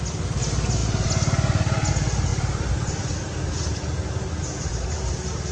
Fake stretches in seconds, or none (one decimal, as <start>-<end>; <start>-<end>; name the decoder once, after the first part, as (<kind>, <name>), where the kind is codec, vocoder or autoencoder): 2.3-4.7 (vocoder, BigVGAN v2)